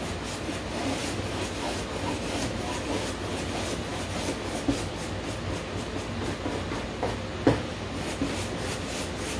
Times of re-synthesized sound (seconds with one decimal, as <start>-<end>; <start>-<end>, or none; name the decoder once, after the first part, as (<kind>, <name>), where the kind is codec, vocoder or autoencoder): none